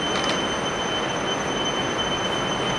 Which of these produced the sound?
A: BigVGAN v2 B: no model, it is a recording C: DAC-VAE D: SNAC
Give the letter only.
B